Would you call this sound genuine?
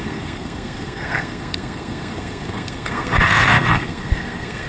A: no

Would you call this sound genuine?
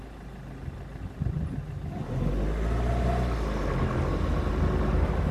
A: yes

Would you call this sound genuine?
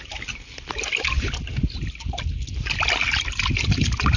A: yes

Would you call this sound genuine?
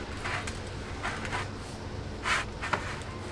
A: yes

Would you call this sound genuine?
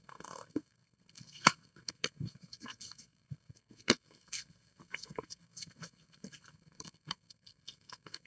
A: no